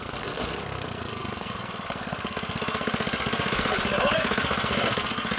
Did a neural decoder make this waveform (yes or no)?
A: yes